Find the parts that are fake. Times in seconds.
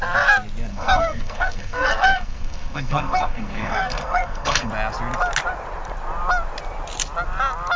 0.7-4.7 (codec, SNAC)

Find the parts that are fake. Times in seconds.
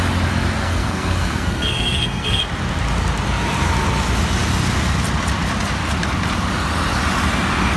0.6-2.4 (codec, SNAC)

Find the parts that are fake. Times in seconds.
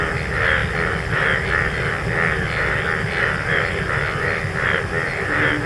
none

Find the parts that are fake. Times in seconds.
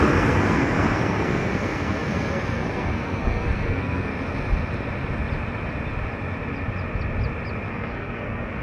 0.0-4.1 (codec, SNAC); 7.7-8.6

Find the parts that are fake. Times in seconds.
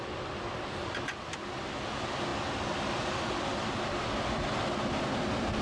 none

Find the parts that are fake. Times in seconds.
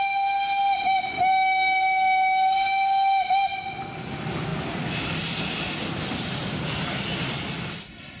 none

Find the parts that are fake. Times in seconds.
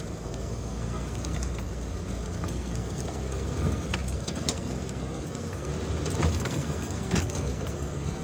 0.0-5.7 (codec, SNAC); 6.3-8.2